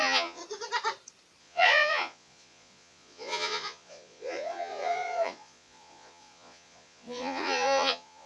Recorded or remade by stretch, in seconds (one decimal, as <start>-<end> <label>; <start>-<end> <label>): 0.0-0.4 remade; 0.4-1.4 recorded; 1.4-8.3 remade